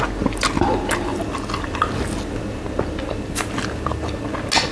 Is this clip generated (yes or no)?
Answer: no